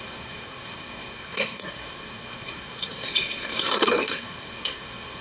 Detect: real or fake fake